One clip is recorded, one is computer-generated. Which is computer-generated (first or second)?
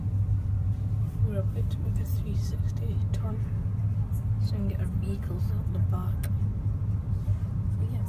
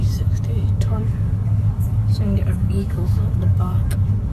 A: second